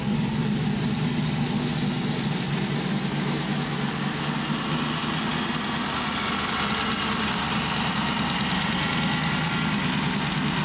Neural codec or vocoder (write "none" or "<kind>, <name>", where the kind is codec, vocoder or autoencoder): none